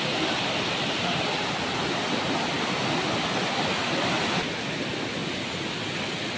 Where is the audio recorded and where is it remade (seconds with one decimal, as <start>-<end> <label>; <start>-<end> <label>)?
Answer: 0.0-6.4 recorded

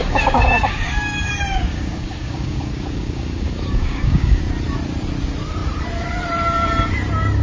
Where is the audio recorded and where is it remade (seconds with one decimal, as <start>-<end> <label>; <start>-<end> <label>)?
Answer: 0.0-4.4 remade; 4.4-7.4 recorded

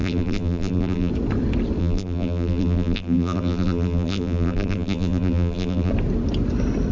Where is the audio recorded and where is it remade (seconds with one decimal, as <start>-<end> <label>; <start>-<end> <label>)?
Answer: 0.0-1.1 remade; 1.1-1.8 recorded; 1.8-5.9 remade; 5.9-6.9 recorded

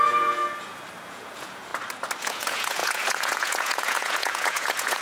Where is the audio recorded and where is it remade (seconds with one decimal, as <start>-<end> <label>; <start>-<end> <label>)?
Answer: 0.0-0.4 remade; 0.4-1.0 recorded; 1.0-1.7 remade; 1.7-2.2 recorded; 2.2-5.0 remade

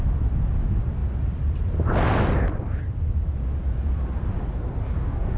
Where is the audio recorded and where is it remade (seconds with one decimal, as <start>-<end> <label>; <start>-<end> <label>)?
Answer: 0.0-4.8 recorded; 4.8-5.4 remade

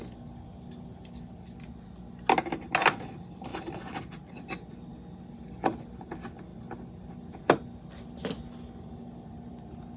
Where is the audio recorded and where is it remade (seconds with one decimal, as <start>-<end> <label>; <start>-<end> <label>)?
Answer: 0.0-10.0 recorded

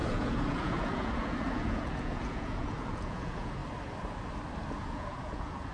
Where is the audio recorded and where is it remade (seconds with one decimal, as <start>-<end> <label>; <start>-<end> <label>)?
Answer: 0.0-3.6 remade; 3.6-4.7 recorded; 4.7-5.7 remade

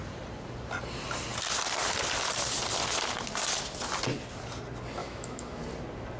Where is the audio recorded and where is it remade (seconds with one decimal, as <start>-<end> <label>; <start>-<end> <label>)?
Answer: 0.0-5.0 recorded; 5.0-5.6 remade; 5.6-6.2 recorded